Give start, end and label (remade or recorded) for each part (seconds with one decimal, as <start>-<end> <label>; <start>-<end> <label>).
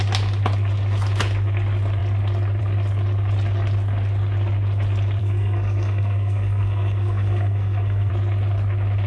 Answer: 0.0-5.2 recorded; 5.2-8.1 remade; 8.1-9.1 recorded